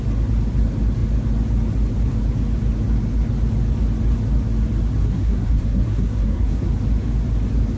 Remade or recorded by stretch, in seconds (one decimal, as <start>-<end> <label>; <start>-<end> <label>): 0.0-5.0 recorded; 5.0-6.7 remade; 6.7-7.8 recorded